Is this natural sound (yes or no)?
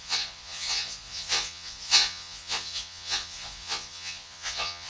no